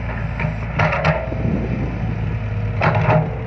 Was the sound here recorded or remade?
recorded